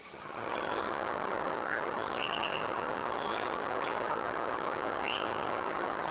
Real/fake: fake